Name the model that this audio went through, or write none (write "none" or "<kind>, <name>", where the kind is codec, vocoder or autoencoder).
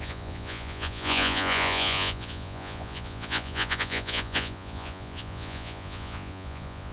vocoder, Vocos